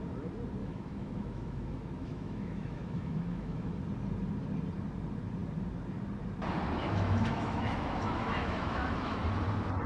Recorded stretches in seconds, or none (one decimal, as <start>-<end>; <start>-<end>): 0.0-0.6; 3.8-6.8; 9.2-9.9